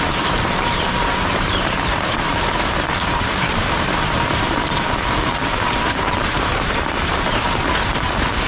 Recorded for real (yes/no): no